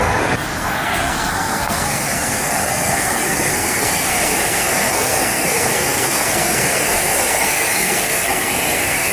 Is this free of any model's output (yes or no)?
no